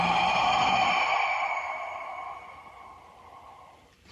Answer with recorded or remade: recorded